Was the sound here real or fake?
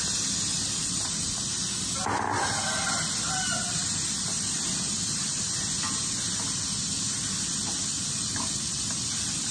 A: real